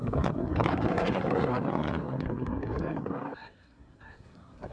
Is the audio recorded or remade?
remade